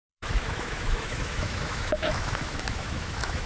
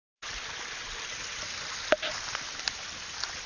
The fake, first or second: first